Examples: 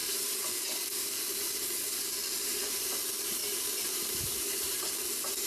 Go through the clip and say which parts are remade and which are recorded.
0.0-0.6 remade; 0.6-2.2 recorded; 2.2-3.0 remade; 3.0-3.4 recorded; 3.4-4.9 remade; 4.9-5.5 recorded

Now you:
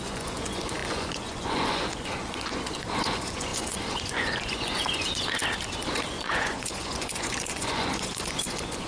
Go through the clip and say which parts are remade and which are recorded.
0.0-5.4 remade; 5.4-6.1 recorded; 6.1-8.9 remade

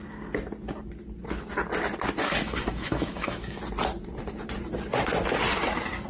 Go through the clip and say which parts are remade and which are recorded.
0.0-2.2 recorded; 2.2-3.6 remade; 3.6-6.1 recorded